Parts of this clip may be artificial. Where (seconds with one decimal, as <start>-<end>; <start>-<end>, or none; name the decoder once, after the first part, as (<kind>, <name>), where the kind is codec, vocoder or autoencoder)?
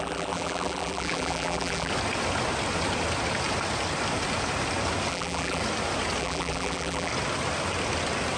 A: 0.0-1.9 (vocoder, BigVGAN v2); 5.1-5.6; 6.2-7.1